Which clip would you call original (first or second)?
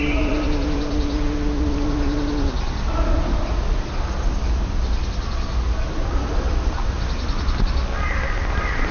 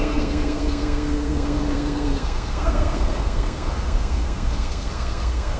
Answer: first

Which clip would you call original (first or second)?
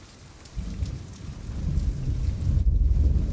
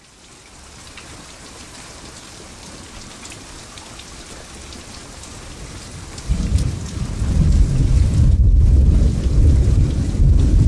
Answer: first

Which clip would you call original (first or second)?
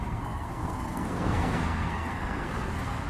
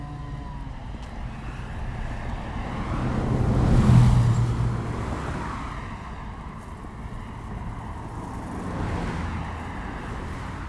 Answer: second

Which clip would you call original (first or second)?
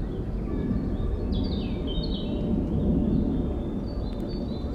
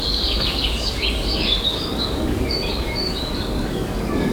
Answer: first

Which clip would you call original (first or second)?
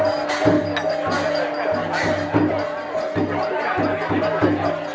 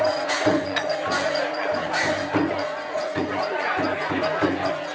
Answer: first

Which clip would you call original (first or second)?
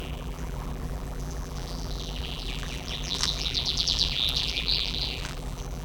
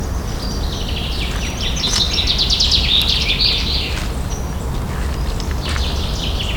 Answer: second